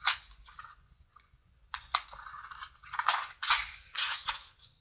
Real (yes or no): no